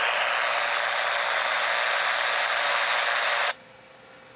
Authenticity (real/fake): real